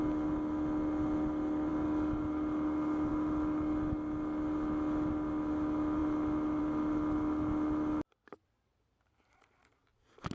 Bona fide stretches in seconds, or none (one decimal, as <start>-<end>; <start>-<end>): 0.0-10.3